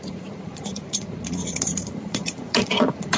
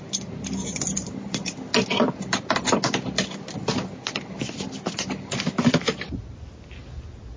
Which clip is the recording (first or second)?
second